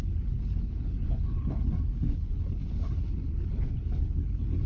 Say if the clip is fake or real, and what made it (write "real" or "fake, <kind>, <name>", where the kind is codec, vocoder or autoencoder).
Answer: fake, codec, HILCodec